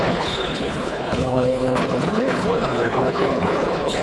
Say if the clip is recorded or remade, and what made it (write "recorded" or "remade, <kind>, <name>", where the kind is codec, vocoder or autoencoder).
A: remade, codec, HILCodec